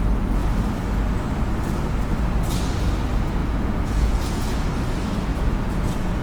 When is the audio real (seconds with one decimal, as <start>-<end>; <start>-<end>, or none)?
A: 0.0-3.4; 4.7-5.3